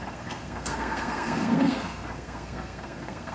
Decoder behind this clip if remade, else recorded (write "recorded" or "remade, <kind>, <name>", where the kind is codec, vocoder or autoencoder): remade, codec, SNAC